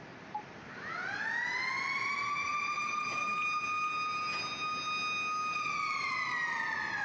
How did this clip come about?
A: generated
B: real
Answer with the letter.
B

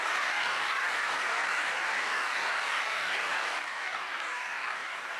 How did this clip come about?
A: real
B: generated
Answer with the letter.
B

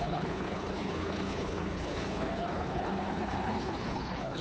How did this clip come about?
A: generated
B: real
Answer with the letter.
A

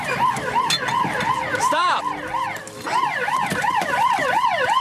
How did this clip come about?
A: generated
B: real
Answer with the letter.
A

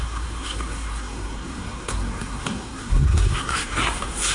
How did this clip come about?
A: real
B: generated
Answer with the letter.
B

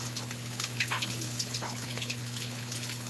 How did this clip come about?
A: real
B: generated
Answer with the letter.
B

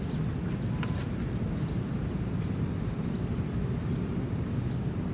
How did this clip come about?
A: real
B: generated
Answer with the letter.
A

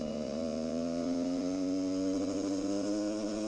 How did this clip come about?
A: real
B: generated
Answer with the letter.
B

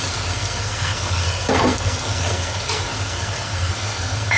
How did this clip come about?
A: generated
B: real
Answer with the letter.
A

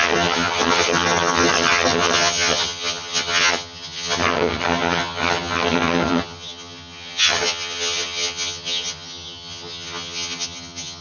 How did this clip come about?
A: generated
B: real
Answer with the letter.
A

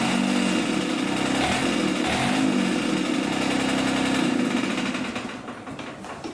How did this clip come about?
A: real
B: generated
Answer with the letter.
A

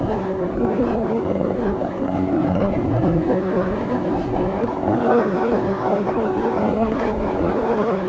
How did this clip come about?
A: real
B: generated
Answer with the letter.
B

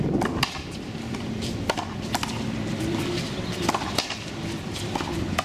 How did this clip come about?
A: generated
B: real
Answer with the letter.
A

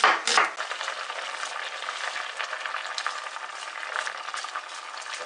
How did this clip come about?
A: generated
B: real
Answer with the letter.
B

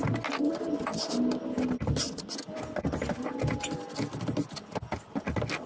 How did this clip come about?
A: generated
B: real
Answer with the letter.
B